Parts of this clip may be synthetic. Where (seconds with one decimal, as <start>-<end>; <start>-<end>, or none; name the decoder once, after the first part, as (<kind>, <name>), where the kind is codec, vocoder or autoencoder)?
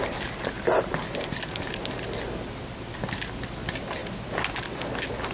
none